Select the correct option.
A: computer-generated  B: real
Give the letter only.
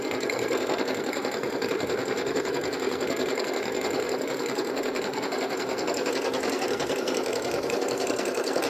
A